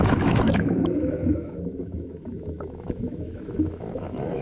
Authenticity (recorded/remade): remade